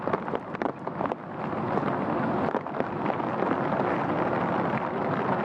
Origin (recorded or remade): recorded